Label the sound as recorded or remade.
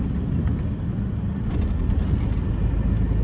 recorded